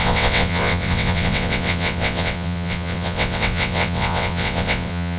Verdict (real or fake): fake